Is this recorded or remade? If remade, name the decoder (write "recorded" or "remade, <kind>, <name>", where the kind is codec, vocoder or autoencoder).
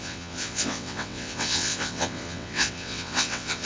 remade, vocoder, WaveNeXt